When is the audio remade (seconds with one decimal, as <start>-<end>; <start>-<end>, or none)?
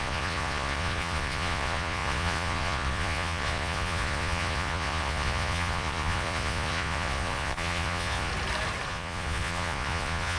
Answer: 0.0-8.3; 8.9-10.4